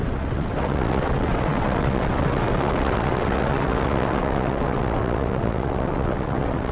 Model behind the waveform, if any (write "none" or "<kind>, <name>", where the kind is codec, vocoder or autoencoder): vocoder, WaveNeXt